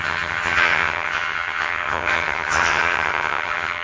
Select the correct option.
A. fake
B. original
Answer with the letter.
A